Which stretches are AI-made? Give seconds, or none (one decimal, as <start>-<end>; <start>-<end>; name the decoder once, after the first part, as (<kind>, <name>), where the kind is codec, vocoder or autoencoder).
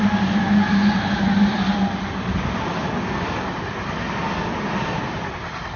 none